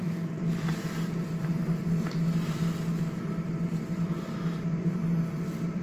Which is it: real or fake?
real